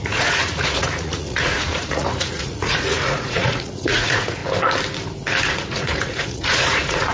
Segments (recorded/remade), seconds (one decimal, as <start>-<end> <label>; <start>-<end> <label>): 0.0-4.4 remade; 4.4-5.5 recorded; 5.5-7.1 remade